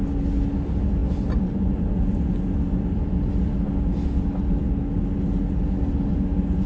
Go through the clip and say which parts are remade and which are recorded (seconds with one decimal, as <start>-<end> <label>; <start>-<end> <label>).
0.0-6.7 recorded